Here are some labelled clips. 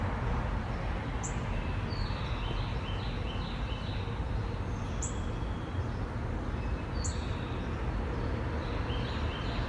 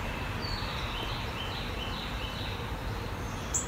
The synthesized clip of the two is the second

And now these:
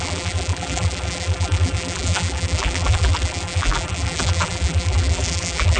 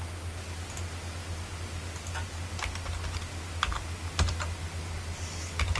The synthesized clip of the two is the first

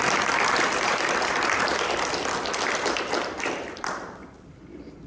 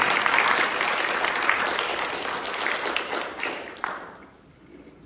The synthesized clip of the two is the first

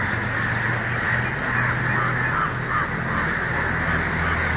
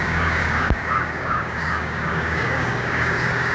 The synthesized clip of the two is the second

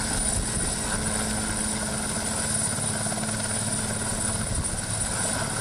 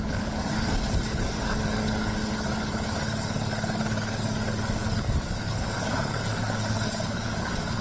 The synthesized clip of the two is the second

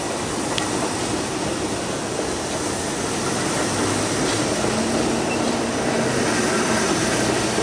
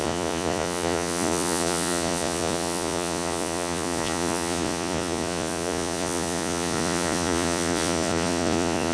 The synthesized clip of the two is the second